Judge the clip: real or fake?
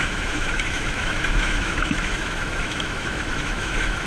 fake